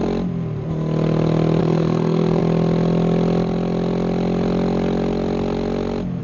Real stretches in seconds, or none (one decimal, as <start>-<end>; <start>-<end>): 0.0-1.6; 2.4-6.2